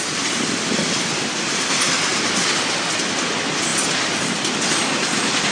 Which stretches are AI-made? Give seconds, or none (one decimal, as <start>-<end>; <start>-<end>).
none